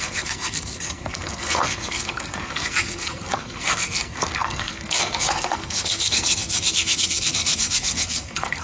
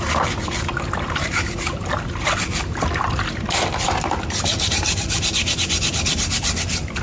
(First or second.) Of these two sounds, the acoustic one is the second